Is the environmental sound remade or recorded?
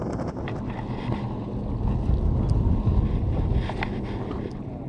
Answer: recorded